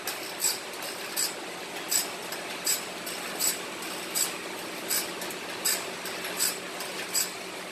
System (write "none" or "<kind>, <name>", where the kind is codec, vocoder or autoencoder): none